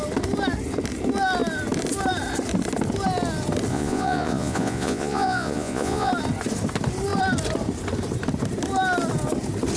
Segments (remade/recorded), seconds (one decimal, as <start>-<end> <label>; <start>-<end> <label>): 0.0-3.7 recorded; 3.7-6.1 remade; 6.1-9.8 recorded